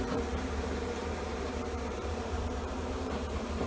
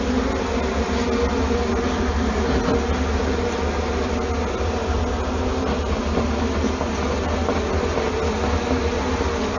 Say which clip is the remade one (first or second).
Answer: first